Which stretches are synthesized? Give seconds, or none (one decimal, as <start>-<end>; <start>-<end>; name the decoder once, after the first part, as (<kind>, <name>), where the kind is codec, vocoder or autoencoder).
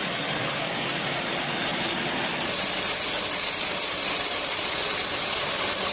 0.0-0.7 (vocoder, BigVGAN v2)